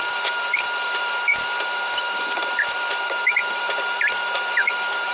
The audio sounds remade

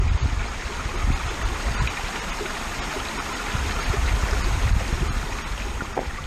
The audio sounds recorded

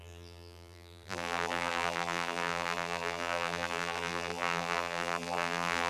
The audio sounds remade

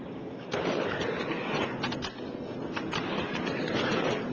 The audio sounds recorded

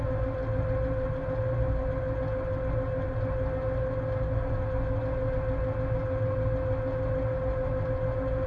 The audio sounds recorded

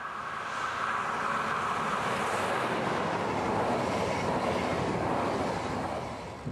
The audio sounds recorded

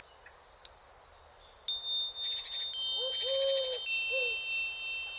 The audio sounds recorded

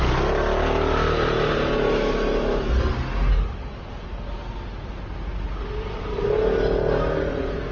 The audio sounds recorded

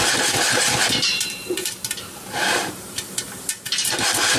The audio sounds remade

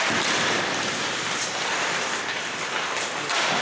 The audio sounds remade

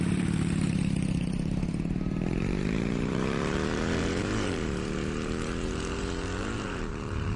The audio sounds remade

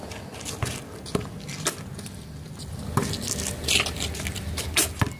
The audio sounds recorded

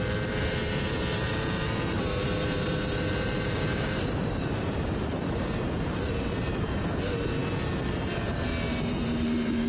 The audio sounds remade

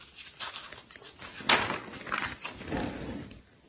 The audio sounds recorded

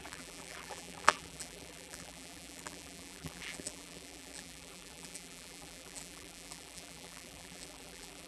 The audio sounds remade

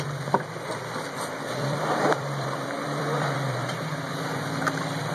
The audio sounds remade